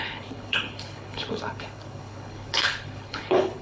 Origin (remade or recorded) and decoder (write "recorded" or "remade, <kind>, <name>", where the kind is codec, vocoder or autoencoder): remade, codec, HILCodec